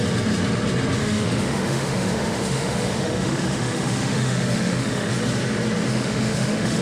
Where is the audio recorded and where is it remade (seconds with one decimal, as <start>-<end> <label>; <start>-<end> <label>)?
0.0-1.0 recorded; 1.0-5.1 remade; 5.1-5.9 recorded; 5.9-6.8 remade